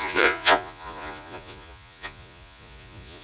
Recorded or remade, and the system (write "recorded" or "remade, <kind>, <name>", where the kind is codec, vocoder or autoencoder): remade, vocoder, Vocos